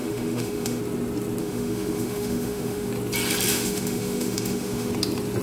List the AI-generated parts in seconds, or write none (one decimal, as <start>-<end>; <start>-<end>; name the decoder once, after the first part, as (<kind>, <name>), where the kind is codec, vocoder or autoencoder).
0.0-0.8 (autoencoder, DAC-VAE); 1.4-2.9; 3.5-4.9